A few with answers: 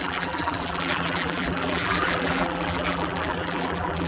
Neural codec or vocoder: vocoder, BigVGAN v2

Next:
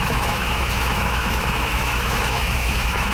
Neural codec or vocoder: autoencoder, DAC-VAE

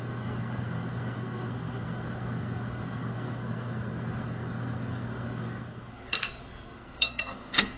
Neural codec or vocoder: codec, SNAC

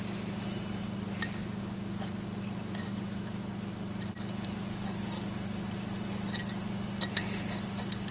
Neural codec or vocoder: none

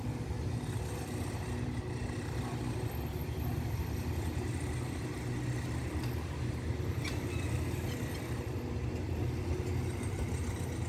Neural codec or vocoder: none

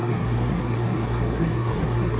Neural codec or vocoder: codec, SNAC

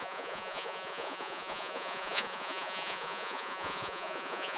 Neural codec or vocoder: vocoder, Vocos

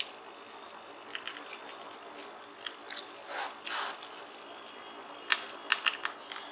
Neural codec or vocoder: none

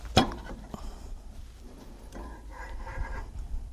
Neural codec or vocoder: vocoder, BigVGAN v2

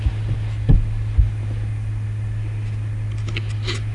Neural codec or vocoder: none